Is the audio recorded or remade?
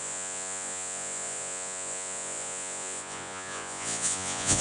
remade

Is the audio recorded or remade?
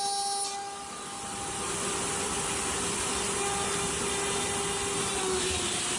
recorded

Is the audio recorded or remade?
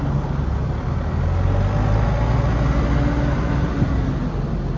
recorded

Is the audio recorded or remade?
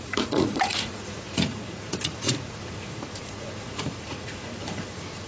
remade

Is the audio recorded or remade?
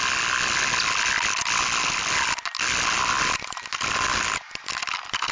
recorded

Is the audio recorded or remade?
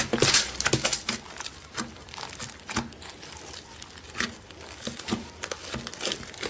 recorded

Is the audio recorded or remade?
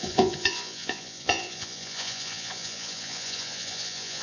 remade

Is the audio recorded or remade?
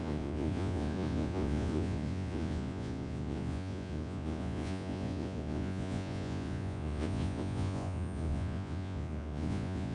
remade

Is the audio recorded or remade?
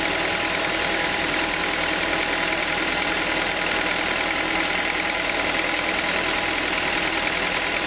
recorded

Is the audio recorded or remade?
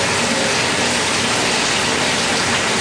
recorded